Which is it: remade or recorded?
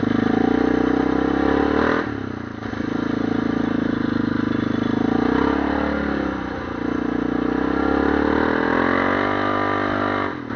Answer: recorded